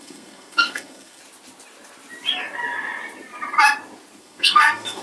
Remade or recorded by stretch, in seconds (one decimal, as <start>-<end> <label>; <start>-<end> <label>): 0.0-1.2 remade; 1.2-4.2 recorded; 4.2-5.0 remade